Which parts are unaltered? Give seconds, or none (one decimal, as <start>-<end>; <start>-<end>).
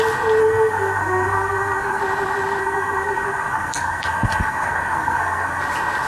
0.0-0.4; 2.0-2.6; 5.6-6.1